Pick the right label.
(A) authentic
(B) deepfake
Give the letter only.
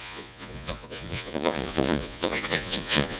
B